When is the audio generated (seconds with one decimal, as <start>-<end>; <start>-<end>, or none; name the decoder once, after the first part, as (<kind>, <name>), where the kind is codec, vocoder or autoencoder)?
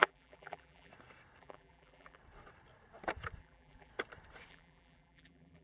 0.0-0.9 (vocoder, BigVGAN v2); 1.4-2.2; 3.4-3.9; 4.5-5.6